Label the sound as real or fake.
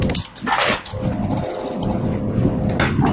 real